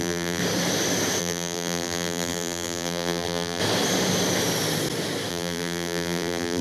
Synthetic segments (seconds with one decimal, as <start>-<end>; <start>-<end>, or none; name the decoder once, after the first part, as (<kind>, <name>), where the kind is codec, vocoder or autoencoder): 0.0-0.4 (vocoder, BigVGAN v2); 1.2-3.6; 5.3-6.6